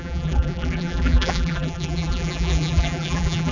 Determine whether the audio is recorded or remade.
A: remade